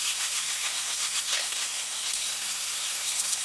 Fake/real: fake